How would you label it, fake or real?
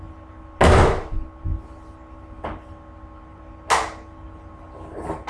real